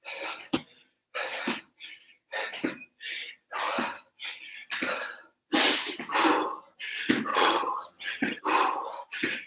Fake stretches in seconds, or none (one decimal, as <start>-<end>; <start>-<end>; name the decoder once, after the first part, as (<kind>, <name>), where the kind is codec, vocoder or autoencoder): 7.3-8.4 (vocoder, HiFi-GAN)